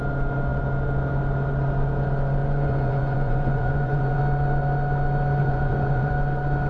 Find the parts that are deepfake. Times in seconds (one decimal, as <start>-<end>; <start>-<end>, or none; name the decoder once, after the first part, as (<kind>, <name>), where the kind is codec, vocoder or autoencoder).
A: 2.4-4.2 (vocoder, Vocos); 5.4-6.1